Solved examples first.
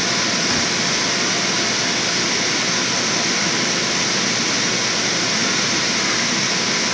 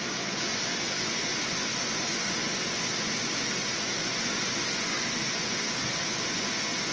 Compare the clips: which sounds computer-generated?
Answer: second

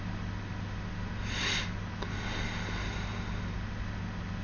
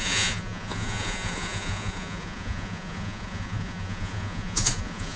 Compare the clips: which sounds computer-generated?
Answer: second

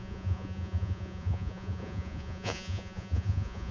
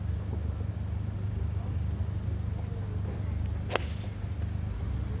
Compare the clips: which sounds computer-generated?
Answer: first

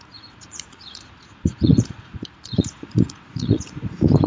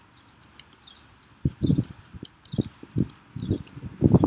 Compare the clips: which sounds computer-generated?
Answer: first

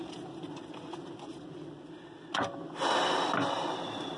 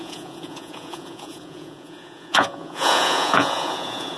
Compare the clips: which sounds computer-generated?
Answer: second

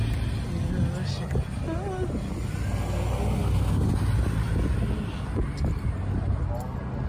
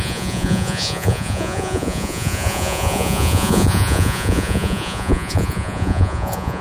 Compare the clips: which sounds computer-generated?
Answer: second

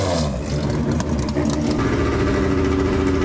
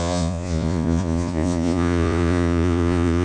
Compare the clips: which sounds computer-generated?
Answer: second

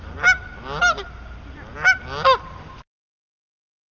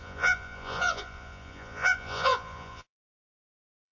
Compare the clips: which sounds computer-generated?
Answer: second